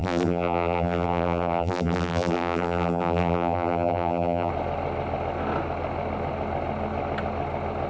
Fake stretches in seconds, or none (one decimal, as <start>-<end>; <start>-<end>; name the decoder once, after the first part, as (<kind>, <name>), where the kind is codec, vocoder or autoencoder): 0.0-4.5 (vocoder, BigVGAN v2)